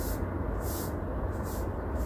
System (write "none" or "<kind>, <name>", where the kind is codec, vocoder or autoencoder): none